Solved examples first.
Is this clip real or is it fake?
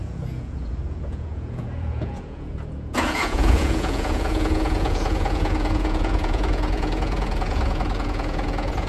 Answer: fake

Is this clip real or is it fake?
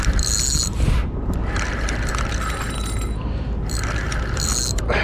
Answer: real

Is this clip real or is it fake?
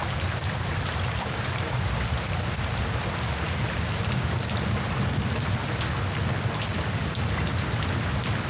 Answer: real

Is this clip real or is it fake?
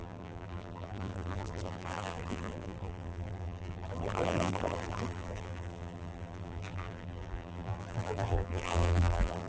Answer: fake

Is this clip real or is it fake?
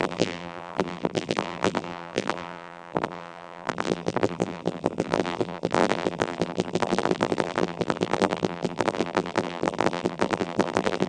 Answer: fake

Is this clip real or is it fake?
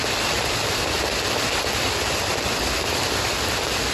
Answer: real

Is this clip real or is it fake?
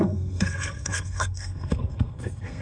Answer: fake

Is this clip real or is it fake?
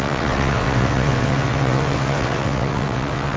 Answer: fake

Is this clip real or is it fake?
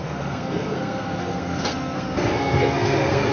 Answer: fake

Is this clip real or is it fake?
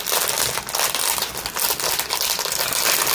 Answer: real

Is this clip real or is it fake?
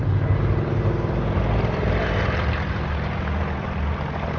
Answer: real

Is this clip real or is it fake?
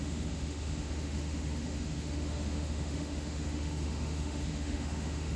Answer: fake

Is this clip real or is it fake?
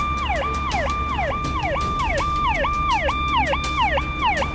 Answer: real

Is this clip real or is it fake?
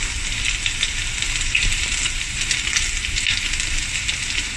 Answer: real